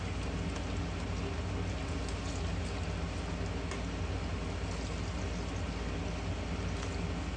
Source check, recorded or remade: recorded